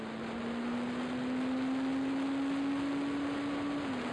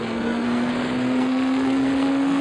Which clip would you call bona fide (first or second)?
first